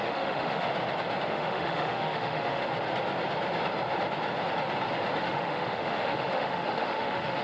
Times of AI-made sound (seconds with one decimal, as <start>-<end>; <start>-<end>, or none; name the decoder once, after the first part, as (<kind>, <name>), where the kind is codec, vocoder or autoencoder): 0.0-0.7 (autoencoder, DAC-VAE); 1.3-2.6; 5.2-7.4